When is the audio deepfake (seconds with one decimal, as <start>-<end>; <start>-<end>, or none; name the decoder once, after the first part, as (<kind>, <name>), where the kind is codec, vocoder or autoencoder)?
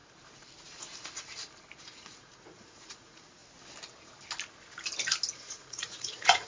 1.8-3.4 (vocoder, Vocos); 5.3-6.5